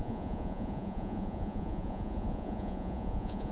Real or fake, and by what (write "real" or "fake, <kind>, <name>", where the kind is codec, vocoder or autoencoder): fake, vocoder, Vocos